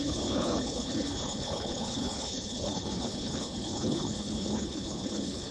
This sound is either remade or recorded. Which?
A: remade